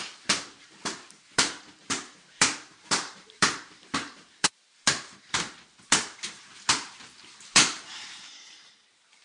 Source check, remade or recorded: remade